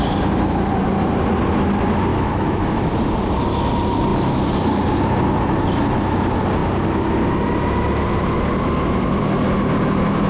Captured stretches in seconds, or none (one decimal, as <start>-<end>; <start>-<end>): 0.0-2.1; 2.9-10.3